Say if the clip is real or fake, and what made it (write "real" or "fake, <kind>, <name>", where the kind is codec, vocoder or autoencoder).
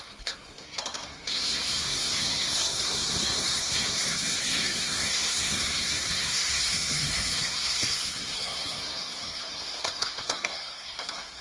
fake, codec, SNAC